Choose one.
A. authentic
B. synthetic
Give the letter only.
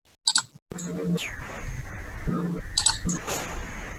A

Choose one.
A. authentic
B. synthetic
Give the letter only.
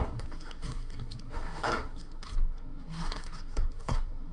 B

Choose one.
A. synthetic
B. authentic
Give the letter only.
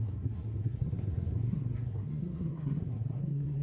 A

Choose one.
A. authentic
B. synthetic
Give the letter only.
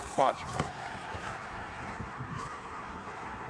B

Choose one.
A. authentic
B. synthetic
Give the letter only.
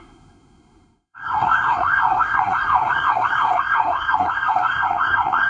B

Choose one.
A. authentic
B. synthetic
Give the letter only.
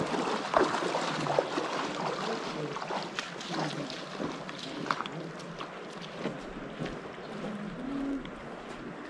A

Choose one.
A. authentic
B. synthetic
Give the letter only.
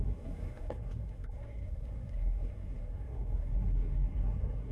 B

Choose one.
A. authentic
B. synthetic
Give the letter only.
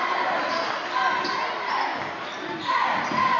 A